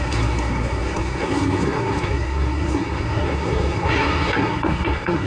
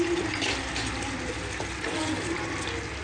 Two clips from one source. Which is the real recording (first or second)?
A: second